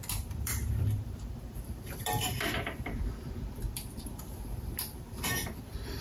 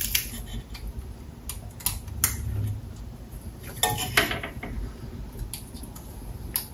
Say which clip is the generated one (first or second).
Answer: first